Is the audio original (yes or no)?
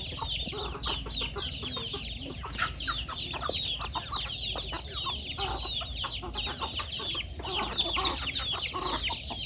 yes